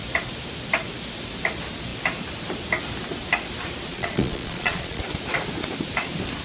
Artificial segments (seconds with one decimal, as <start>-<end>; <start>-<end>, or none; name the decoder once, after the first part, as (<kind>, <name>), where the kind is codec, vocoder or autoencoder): 3.9-5.0 (vocoder, Vocos)